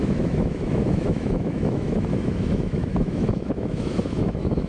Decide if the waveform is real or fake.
fake